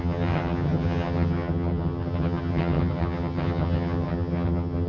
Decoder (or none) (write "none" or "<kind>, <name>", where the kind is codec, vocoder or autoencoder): vocoder, HiFi-GAN